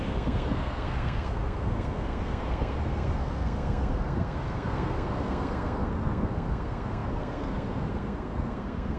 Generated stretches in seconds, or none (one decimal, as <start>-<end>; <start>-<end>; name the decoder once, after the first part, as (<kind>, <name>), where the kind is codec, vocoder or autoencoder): 0.0-9.0 (codec, SNAC)